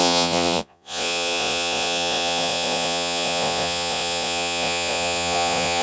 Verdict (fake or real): fake